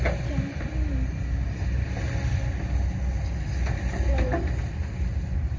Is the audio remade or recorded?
recorded